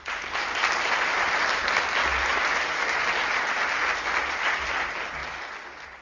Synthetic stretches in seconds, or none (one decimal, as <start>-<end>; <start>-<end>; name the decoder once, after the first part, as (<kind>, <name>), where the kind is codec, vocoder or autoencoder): none